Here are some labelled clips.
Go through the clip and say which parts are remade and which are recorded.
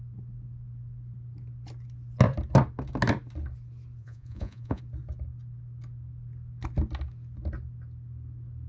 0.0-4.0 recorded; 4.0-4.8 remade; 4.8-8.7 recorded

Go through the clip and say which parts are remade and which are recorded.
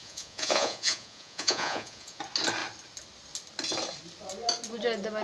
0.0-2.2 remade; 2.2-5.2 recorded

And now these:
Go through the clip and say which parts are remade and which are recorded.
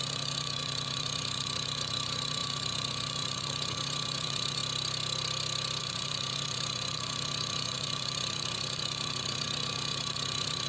0.0-4.6 remade; 4.6-5.8 recorded; 5.8-10.7 remade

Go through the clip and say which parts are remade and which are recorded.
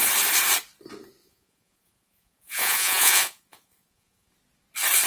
0.0-1.2 recorded; 1.2-4.3 remade; 4.3-5.1 recorded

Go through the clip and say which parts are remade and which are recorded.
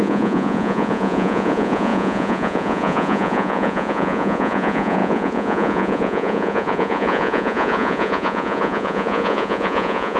0.0-10.2 remade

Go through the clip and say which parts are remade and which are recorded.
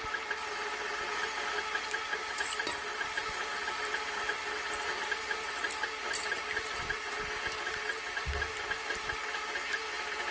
0.0-10.3 recorded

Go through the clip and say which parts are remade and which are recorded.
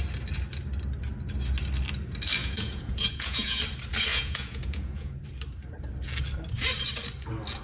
0.0-2.4 recorded; 2.4-3.6 remade; 3.6-4.1 recorded; 4.1-5.2 remade; 5.2-7.6 recorded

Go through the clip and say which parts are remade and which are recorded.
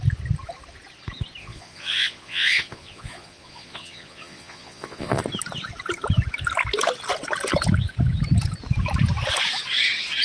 0.0-1.4 recorded; 1.4-5.2 remade; 5.2-10.2 recorded